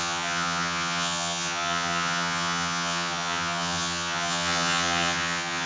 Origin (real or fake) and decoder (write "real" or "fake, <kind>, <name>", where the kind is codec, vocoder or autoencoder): fake, vocoder, HiFi-GAN